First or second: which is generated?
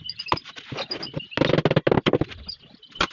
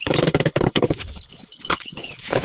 second